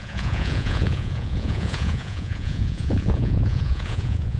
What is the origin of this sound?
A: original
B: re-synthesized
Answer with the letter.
B